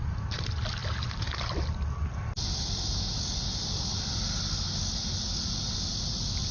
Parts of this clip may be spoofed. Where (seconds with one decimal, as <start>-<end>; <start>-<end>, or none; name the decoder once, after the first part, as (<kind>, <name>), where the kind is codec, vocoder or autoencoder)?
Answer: none